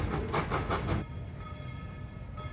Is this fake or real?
real